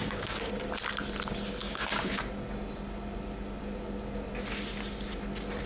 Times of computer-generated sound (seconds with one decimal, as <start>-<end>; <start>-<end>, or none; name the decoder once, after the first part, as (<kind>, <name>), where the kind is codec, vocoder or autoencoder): 0.0-0.5 (codec, DAC); 1.6-2.2